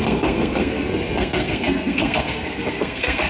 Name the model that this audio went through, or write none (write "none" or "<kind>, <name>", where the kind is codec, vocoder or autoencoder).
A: codec, SNAC